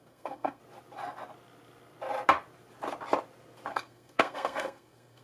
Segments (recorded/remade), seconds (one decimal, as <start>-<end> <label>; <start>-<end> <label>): 0.0-0.6 remade; 0.6-3.7 recorded; 3.7-5.2 remade